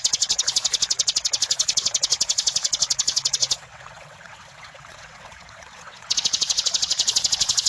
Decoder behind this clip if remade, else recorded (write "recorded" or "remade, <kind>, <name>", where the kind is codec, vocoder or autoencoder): remade, vocoder, WaveNeXt